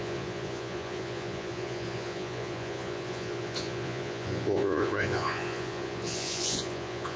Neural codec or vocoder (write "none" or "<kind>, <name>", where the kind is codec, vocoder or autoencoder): vocoder, Vocos